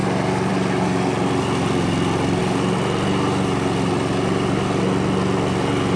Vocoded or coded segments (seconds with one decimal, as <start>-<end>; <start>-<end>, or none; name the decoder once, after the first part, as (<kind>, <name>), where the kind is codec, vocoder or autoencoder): none